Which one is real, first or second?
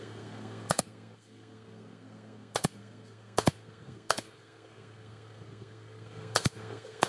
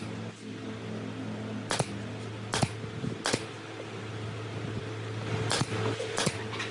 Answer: second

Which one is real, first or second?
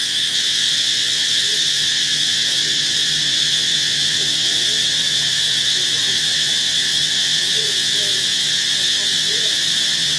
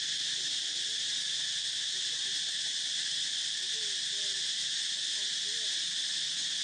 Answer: second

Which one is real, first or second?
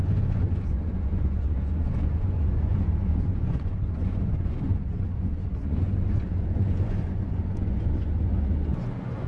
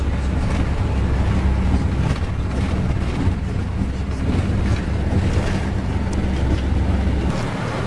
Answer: second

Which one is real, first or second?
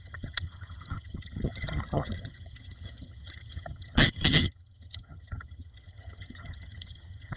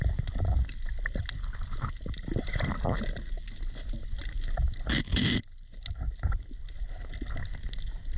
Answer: second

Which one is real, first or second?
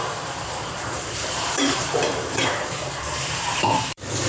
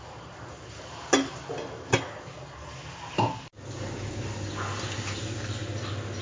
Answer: second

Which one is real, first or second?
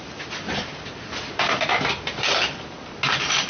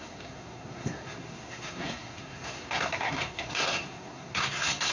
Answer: first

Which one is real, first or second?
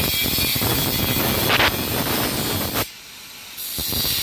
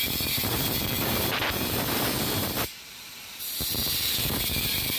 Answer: first